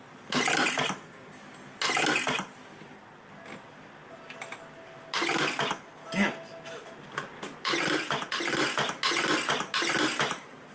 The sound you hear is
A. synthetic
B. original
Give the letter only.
B